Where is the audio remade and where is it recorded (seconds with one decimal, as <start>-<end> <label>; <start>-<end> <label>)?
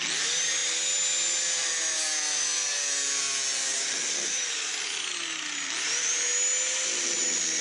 0.0-7.6 recorded